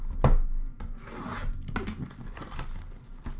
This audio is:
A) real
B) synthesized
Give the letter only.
A